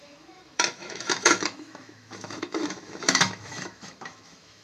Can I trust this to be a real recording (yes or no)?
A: no